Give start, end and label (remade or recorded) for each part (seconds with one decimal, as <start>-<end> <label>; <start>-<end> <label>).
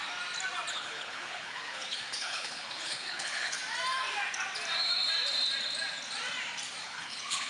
0.0-0.7 recorded; 0.7-3.6 remade; 3.6-6.8 recorded; 6.8-7.5 remade